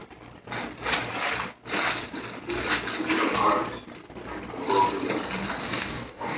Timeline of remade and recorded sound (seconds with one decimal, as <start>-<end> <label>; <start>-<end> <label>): 0.0-5.6 recorded; 5.6-6.4 remade